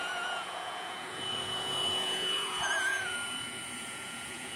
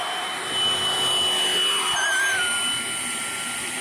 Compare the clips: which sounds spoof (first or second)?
first